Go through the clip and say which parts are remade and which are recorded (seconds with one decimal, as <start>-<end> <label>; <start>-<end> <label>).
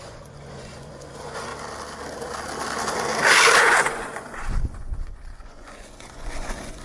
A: 0.0-1.5 remade; 1.5-3.6 recorded; 3.6-6.8 remade